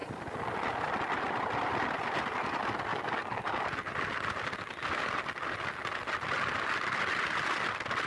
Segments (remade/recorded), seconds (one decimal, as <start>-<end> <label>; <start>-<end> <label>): 0.0-2.9 recorded; 2.9-3.6 remade; 3.6-8.1 recorded